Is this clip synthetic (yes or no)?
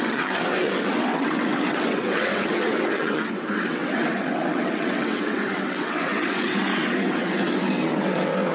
yes